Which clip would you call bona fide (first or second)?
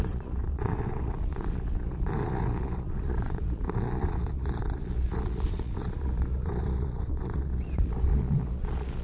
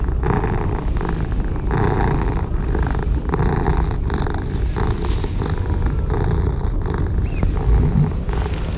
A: second